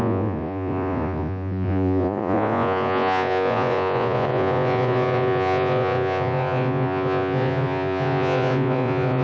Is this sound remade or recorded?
remade